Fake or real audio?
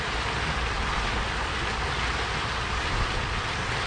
real